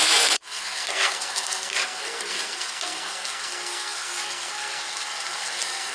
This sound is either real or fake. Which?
fake